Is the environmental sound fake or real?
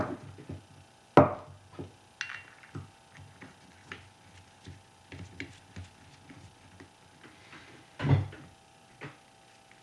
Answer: real